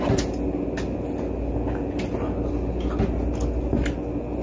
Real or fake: real